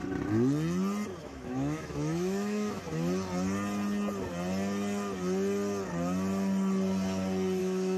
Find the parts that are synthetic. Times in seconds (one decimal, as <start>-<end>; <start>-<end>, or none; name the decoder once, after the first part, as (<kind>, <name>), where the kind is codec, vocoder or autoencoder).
1.2-2.8 (autoencoder, DAC-VAE); 7.6-8.0